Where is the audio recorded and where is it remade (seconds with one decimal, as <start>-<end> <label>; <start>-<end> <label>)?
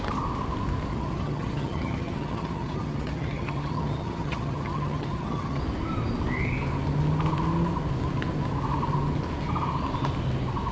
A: 0.0-0.9 recorded; 0.9-5.6 remade; 5.6-10.7 recorded